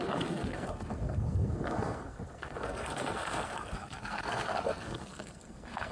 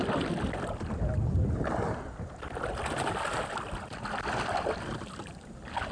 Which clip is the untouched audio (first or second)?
second